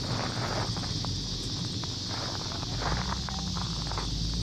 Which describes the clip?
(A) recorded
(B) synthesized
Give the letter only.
A